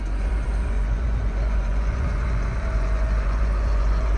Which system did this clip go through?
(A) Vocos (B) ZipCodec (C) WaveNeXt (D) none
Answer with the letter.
A